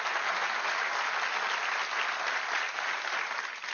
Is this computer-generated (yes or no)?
no